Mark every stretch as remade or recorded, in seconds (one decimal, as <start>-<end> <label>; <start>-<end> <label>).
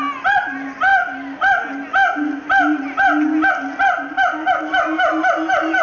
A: 0.0-5.8 recorded